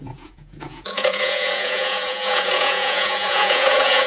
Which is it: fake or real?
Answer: fake